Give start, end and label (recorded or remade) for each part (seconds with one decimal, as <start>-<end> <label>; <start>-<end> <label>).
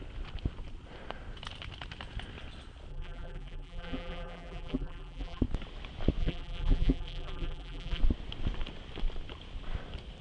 0.0-2.9 recorded; 2.9-5.4 remade; 5.4-6.2 recorded; 6.2-8.0 remade; 8.0-10.2 recorded